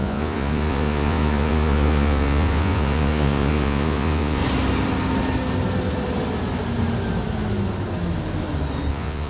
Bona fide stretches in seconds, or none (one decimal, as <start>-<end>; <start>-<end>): 4.4-8.9